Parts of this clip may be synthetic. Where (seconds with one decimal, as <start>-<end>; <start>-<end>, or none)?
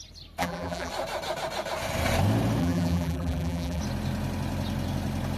0.4-0.9; 2.6-3.8